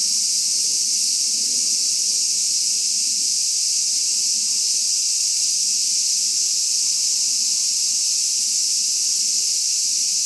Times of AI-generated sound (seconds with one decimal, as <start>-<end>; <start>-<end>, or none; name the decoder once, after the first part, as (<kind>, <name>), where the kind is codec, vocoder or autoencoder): none